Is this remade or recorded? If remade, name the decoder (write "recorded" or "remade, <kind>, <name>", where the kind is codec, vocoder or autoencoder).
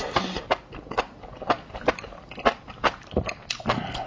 recorded